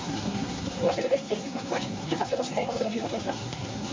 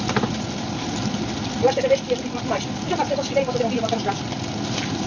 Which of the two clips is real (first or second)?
second